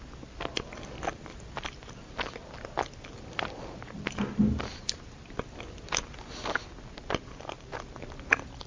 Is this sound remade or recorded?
recorded